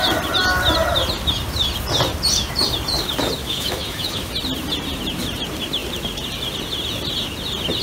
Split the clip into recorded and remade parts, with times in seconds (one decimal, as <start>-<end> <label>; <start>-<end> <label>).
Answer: 0.0-3.4 recorded; 3.4-4.3 remade; 4.3-7.8 recorded